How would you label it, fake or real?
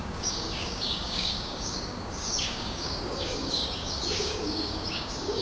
fake